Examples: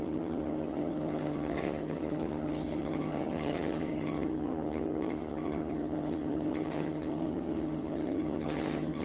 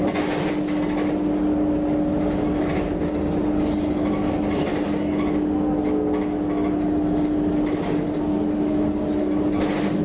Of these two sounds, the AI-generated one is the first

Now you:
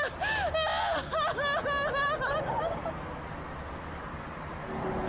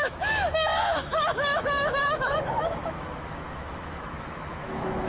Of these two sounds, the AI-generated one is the second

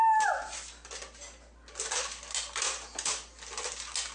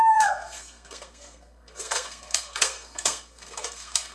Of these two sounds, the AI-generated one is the second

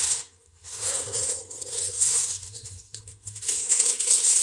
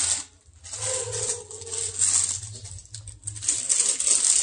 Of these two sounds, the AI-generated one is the first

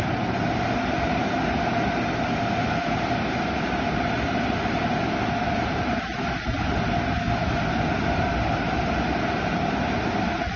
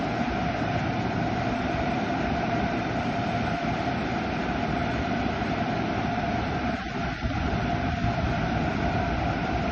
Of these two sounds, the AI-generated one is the second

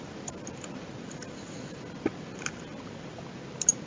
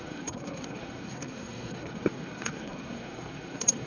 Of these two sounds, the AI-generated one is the second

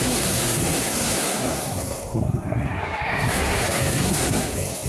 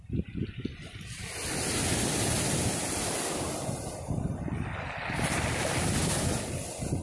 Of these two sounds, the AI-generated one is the first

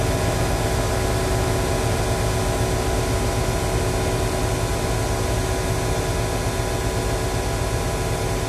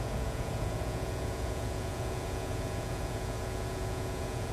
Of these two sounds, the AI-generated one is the second